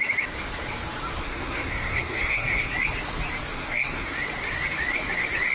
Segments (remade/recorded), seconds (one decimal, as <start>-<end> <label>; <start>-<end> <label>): 0.0-1.2 recorded; 1.2-2.7 remade; 2.7-3.5 recorded; 3.5-4.1 remade; 4.1-5.5 recorded